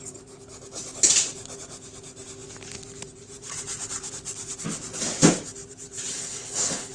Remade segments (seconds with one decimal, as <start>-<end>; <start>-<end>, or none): 6.1-6.9